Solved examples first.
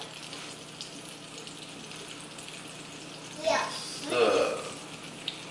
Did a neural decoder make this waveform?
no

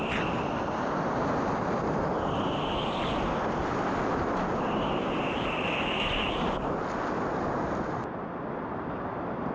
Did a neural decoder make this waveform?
no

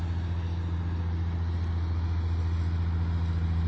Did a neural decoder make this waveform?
no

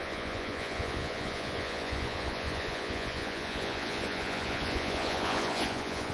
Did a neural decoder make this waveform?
yes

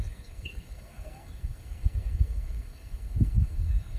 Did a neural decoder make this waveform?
yes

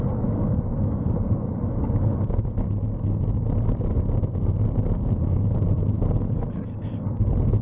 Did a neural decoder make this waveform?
no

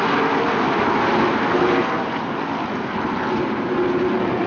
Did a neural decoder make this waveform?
no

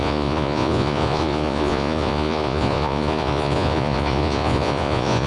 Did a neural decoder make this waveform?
yes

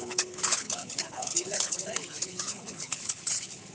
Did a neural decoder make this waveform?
yes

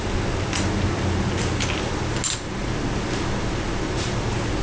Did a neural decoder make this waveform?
no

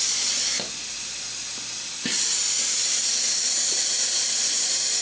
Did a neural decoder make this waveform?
no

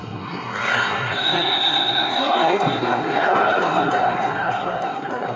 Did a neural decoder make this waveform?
yes